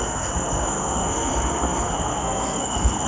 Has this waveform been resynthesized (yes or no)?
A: yes